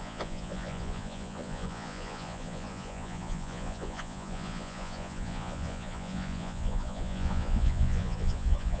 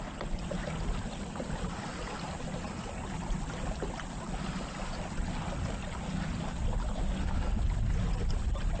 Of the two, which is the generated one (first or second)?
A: first